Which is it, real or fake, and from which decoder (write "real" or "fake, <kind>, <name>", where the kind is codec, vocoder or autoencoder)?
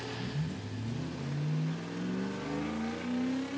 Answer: real